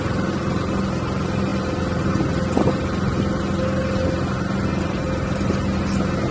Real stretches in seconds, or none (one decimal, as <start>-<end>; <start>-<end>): 0.0-6.3